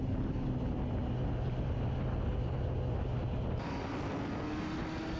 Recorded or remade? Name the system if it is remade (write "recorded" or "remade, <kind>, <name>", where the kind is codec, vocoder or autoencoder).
recorded